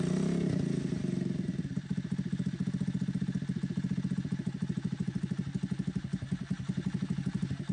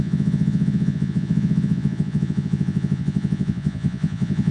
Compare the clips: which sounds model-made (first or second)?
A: second